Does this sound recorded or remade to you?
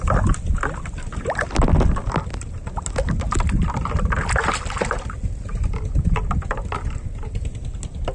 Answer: recorded